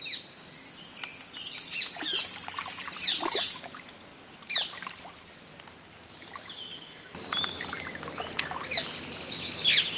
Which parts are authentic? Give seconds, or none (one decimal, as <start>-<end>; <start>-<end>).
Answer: 0.0-10.0